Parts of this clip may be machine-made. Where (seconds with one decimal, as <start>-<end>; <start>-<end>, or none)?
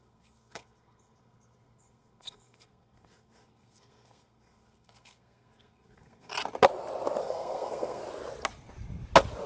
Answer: 0.0-6.3; 7.2-8.0